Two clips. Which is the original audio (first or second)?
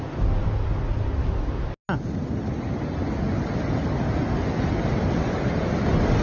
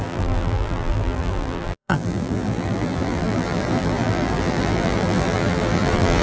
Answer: first